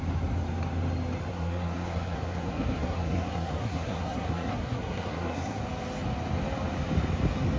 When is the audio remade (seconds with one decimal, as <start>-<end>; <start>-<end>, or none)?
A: 1.3-5.6